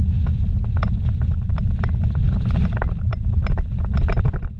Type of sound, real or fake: real